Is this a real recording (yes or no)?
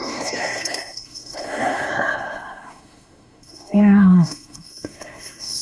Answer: no